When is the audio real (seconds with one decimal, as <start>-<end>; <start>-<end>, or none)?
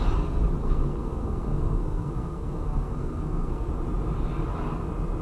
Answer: 0.0-0.6; 3.7-5.2